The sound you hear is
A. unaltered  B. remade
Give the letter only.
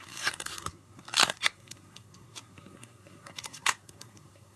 B